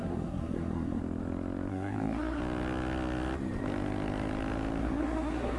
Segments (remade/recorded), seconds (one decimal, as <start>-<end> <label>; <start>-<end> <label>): 0.0-1.0 remade; 1.0-1.7 recorded; 1.7-2.4 remade; 2.4-4.8 recorded; 4.8-5.6 remade